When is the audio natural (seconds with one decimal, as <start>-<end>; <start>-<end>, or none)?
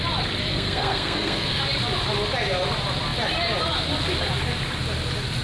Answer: 0.0-0.5; 1.6-5.4